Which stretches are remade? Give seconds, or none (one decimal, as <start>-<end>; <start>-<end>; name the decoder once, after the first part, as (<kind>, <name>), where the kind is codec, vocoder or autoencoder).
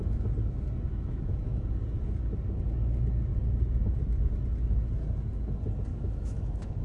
0.9-1.6 (autoencoder, DAC-VAE); 5.9-6.8